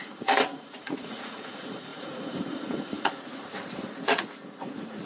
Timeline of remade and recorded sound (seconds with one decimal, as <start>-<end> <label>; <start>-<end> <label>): 0.0-5.1 remade

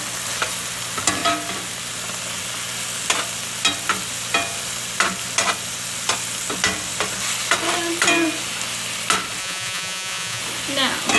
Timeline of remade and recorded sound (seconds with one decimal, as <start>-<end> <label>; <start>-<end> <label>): 0.0-9.4 recorded; 9.4-10.4 remade; 10.4-11.2 recorded